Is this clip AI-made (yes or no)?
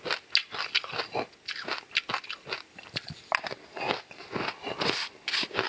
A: no